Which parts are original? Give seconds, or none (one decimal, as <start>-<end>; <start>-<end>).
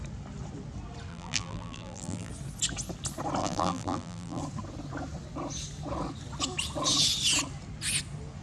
0.0-1.1; 2.3-3.4; 4.4-8.4